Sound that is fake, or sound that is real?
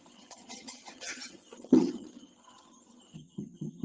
fake